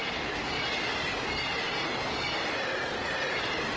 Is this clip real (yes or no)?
yes